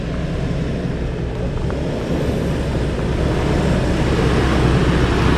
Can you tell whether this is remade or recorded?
recorded